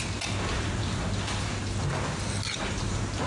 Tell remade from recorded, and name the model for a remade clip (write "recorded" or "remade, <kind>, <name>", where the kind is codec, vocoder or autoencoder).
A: recorded